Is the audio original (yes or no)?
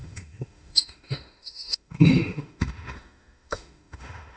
no